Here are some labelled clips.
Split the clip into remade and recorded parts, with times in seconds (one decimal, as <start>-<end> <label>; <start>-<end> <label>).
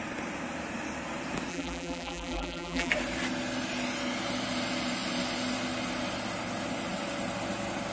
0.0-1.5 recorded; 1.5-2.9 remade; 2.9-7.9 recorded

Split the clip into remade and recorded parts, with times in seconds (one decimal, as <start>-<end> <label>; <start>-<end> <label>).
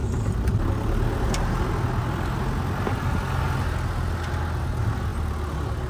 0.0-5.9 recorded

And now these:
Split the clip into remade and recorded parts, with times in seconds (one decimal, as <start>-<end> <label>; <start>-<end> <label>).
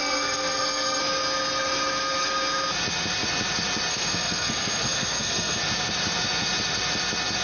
0.0-1.0 remade; 1.0-3.9 recorded; 3.9-5.6 remade; 5.6-7.4 recorded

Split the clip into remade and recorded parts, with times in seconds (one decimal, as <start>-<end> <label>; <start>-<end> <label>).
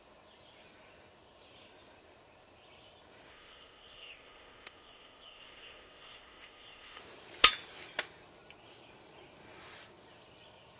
0.0-3.3 recorded; 3.3-7.0 remade; 7.0-10.8 recorded